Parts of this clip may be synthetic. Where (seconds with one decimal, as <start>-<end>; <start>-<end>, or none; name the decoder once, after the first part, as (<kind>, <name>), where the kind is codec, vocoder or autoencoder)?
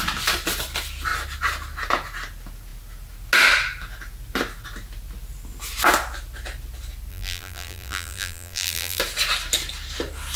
7.1-9.0 (vocoder, BigVGAN v2)